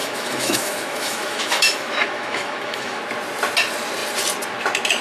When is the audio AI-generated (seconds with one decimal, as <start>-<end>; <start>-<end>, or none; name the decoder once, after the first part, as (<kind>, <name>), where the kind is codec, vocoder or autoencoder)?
0.0-3.0 (autoencoder, DAC-VAE)